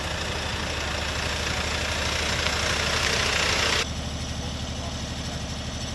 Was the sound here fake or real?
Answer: real